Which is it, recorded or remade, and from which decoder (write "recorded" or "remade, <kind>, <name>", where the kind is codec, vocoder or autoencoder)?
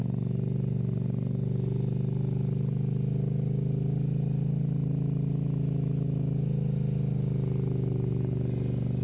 recorded